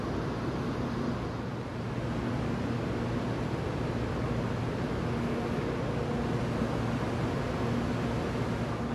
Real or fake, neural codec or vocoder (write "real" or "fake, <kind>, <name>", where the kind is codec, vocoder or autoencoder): real